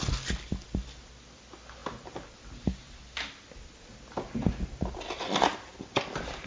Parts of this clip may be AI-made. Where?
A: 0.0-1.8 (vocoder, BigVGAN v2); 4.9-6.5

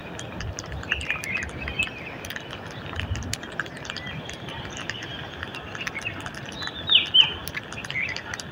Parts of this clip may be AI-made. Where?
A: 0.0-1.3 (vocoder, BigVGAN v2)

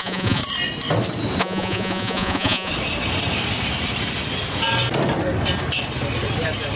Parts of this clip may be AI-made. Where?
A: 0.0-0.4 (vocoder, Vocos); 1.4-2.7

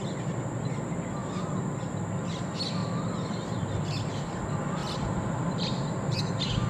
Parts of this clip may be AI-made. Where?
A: 4.8-6.2 (vocoder, BigVGAN v2)

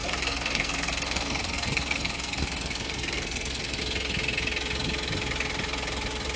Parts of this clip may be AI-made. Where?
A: 0.0-3.8 (codec, SNAC)

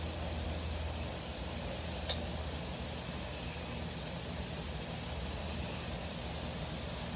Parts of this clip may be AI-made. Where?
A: none

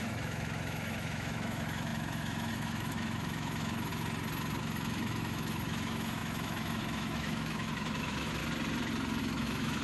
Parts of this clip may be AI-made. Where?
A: 0.0-3.9 (autoencoder, DAC-VAE); 4.6-8.4; 9.2-9.8

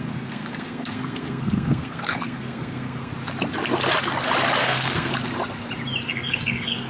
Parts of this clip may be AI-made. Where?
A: 0.0-3.1 (codec, SNAC); 4.6-5.1; 6.0-6.9